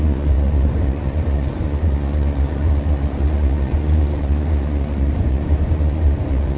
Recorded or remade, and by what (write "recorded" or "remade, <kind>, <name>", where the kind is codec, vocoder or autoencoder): remade, vocoder, Vocos